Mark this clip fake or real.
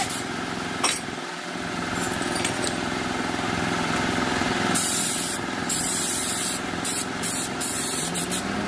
fake